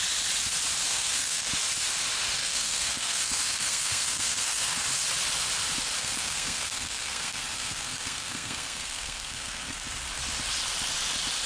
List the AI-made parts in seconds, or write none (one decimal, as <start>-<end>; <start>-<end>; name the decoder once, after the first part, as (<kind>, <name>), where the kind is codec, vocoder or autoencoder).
0.9-1.5 (codec, SNAC); 2.4-4.8; 6.0-9.8

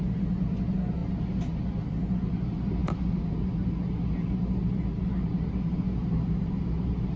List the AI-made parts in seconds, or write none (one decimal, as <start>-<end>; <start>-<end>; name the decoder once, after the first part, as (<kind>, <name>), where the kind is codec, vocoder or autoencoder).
none

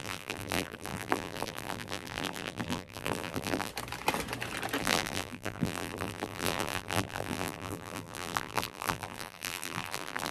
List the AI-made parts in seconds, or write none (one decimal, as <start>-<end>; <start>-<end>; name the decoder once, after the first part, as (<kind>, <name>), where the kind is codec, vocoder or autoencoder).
0.0-3.7 (vocoder, BigVGAN v2); 4.8-10.3

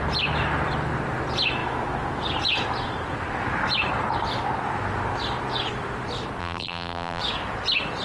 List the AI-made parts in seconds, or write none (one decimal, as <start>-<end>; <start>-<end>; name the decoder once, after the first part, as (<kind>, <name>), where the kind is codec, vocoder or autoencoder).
6.4-7.2 (vocoder, BigVGAN v2)

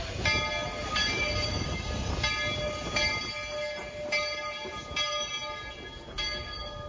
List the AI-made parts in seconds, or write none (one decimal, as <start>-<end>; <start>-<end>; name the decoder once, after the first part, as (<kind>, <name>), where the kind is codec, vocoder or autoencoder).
1.0-2.1 (codec, DAC); 6.2-6.9

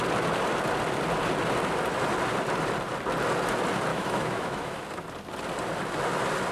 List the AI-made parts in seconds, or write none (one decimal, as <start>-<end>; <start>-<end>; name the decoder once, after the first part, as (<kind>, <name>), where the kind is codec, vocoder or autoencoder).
3.9-4.8 (autoencoder, DAC-VAE)